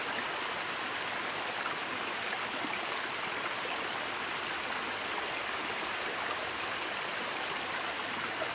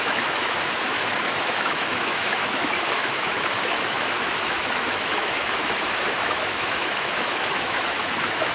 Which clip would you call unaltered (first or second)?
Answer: first